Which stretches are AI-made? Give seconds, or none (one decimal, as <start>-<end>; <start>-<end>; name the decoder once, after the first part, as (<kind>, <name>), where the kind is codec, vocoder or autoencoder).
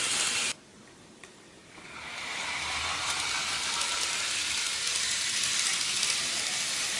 0.7-3.2 (vocoder, BigVGAN v2)